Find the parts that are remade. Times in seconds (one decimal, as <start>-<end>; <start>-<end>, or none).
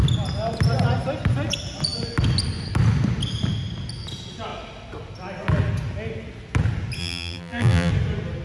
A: 7.0-7.9